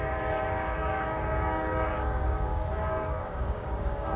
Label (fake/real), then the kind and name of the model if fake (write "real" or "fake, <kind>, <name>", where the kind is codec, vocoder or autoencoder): fake, codec, DAC